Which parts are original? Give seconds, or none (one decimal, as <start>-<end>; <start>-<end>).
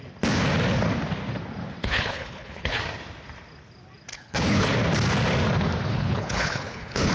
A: 0.0-1.8; 2.8-4.1; 4.7-5.9